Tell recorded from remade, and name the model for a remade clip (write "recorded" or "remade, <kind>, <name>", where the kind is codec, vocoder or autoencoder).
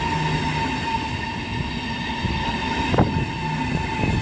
recorded